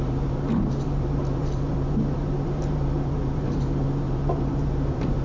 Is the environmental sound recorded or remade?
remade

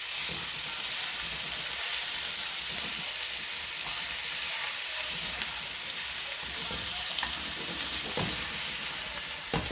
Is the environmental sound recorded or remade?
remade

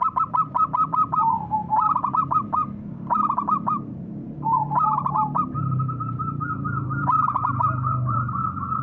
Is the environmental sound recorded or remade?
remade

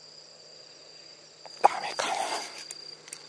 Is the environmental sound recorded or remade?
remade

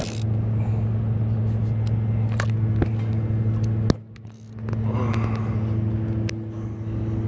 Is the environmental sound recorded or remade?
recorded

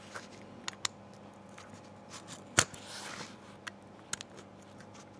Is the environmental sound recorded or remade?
recorded